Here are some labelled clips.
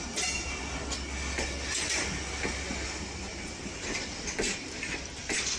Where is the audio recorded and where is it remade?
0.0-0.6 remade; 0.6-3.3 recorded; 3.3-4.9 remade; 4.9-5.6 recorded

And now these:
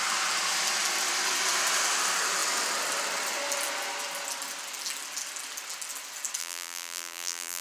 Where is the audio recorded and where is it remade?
0.0-6.4 recorded; 6.4-7.6 remade

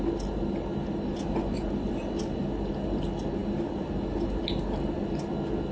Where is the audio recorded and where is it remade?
0.0-5.7 recorded

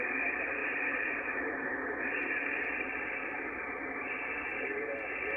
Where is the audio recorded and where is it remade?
0.0-0.6 remade; 0.6-2.0 recorded; 2.0-5.4 remade

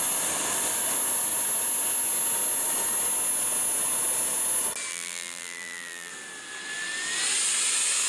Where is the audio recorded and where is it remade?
0.0-4.9 recorded; 4.9-6.1 remade; 6.1-8.1 recorded